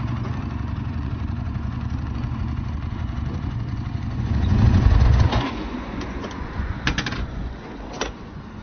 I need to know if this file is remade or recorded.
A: remade